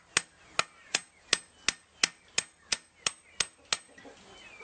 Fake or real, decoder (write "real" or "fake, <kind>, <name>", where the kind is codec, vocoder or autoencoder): real